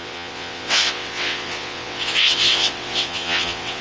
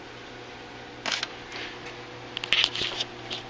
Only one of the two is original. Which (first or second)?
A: second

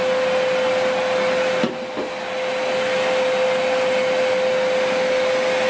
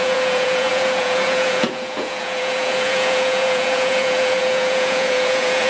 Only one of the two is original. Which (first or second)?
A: first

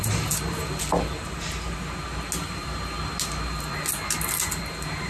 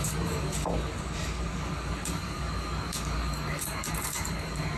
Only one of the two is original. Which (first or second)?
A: first